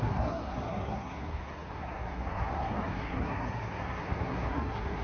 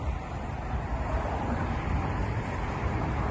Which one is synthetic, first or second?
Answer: first